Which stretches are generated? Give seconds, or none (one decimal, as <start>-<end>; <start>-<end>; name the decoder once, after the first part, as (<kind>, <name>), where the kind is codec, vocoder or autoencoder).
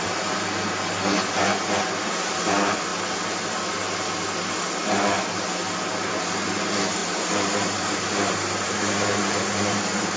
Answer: 7.0-10.2 (vocoder, BigVGAN v2)